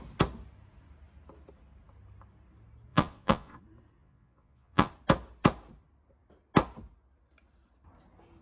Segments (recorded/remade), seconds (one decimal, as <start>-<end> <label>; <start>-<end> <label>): 0.0-2.9 recorded; 2.9-3.6 remade; 3.6-4.0 recorded; 4.0-4.9 remade; 4.9-8.4 recorded